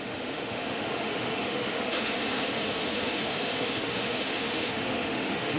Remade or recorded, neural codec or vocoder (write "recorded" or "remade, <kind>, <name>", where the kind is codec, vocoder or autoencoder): remade, autoencoder, DAC-VAE